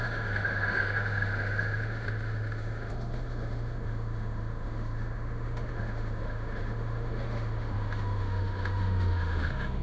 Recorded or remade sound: remade